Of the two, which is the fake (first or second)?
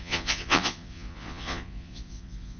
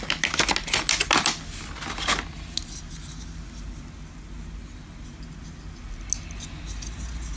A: first